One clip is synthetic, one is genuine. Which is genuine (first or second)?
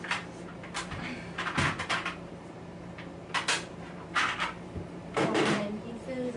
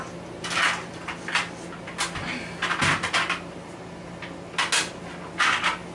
second